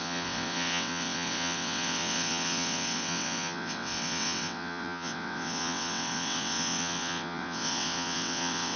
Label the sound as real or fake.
fake